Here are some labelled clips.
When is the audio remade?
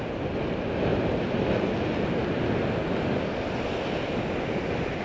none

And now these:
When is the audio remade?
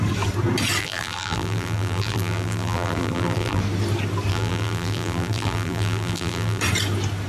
0.8-3.6 (vocoder, BigVGAN v2); 4.3-6.6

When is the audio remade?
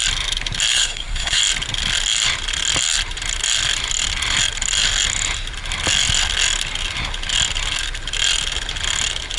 0.7-1.4 (codec, SNAC)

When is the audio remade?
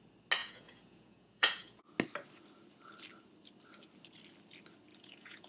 0.4-1.8 (vocoder, Vocos); 4.9-5.5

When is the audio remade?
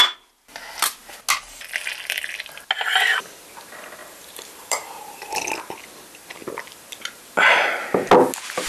4.0-5.4 (vocoder, BigVGAN v2)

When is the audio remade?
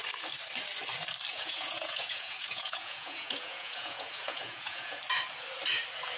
1.3-5.0 (vocoder, Vocos)